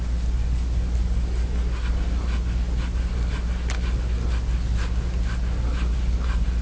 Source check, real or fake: real